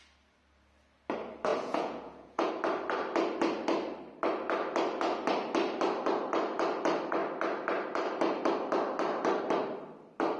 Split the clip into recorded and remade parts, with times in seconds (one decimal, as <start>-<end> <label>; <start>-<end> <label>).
0.0-1.5 recorded; 1.5-2.5 remade; 2.5-10.4 recorded